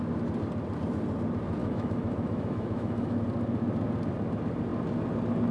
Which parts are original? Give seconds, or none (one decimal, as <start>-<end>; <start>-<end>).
0.0-1.6; 3.2-5.5